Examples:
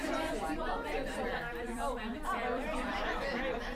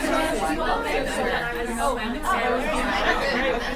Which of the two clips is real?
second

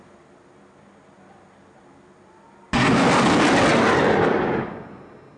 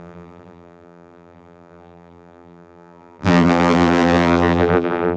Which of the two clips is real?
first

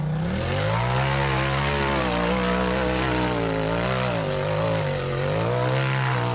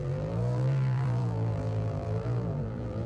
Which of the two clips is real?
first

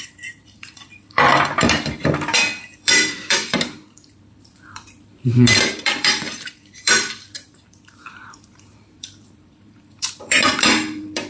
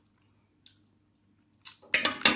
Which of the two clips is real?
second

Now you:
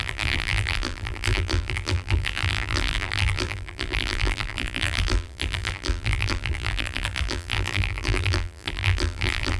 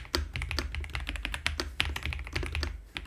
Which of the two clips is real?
second